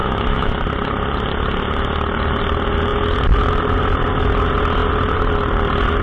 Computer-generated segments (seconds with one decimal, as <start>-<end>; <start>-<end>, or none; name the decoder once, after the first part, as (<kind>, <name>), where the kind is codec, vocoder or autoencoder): 0.0-0.5 (autoencoder, DAC-VAE)